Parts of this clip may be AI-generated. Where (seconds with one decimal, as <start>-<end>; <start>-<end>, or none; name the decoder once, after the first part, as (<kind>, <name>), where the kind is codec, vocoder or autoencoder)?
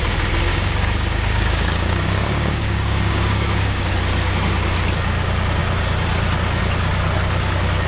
0.5-3.9 (codec, DAC)